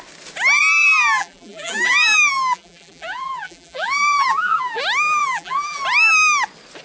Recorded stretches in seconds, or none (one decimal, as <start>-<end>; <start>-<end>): 0.0-0.8; 4.8-5.2; 5.8-6.8